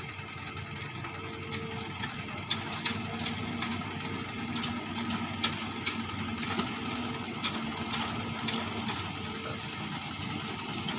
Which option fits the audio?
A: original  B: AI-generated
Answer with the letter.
A